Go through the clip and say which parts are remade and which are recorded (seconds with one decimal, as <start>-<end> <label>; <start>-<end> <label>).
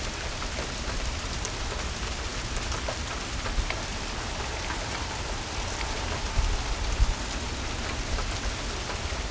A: 0.0-9.3 recorded